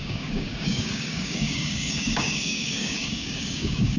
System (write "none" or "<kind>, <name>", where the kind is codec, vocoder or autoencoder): codec, DAC